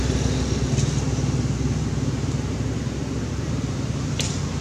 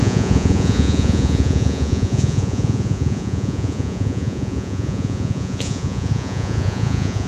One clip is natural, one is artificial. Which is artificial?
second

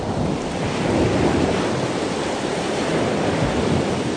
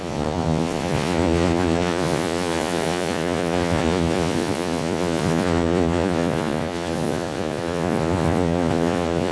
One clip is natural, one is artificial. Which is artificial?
second